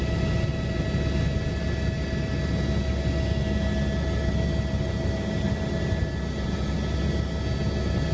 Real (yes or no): yes